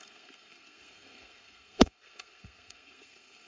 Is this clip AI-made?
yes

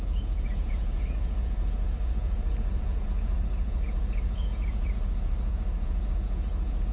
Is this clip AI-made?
yes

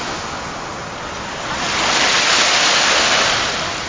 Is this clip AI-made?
no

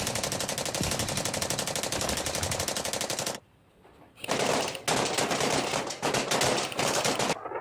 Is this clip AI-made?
no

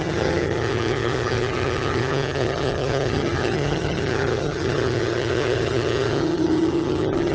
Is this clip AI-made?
yes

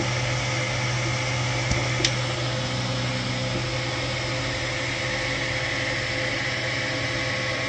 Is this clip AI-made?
no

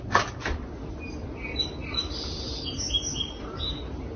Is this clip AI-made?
no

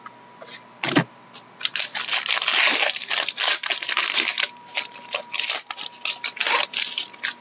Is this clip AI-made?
no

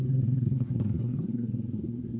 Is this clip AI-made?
yes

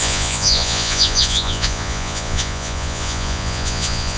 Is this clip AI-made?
yes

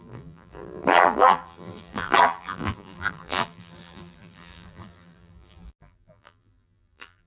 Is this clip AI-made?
yes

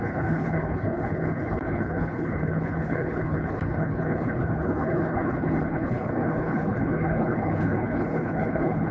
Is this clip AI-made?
yes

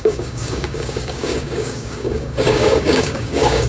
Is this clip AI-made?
yes